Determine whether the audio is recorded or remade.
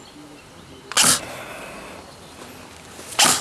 recorded